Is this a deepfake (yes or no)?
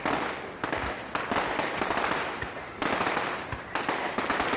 no